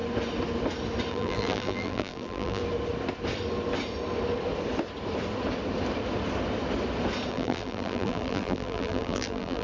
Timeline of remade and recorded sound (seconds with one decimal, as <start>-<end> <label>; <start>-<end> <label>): 0.0-1.1 recorded; 1.1-2.6 remade; 2.6-7.3 recorded; 7.3-9.6 remade